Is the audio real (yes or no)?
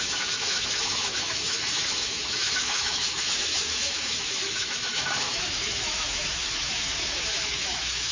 no